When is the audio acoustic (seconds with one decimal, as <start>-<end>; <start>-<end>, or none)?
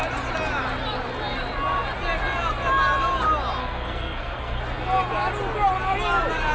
0.0-3.6; 4.6-6.5